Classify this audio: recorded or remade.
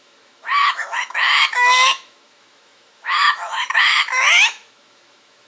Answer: remade